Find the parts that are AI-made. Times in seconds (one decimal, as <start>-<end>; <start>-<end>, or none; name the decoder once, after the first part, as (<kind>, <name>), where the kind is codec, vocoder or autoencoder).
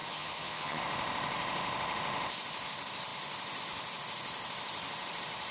0.0-0.8 (vocoder, HiFi-GAN)